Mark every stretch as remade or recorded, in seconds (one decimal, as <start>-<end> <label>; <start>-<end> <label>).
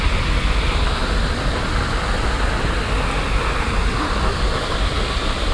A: 0.0-5.5 recorded